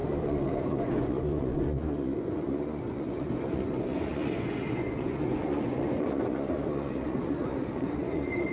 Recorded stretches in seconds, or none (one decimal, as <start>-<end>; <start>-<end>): none